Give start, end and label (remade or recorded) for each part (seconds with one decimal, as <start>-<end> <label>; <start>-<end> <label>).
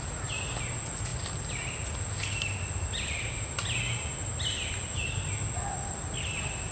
0.0-6.7 recorded